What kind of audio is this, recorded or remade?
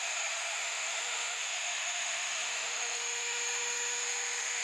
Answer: remade